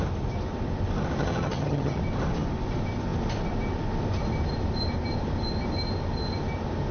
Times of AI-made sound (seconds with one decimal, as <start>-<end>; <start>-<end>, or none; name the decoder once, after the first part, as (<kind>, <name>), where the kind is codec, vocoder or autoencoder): 1.2-2.0 (vocoder, HiFi-GAN)